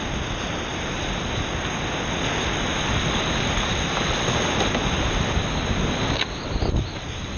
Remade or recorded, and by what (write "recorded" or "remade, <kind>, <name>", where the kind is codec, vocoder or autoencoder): recorded